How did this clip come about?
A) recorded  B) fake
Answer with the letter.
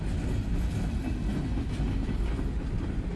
A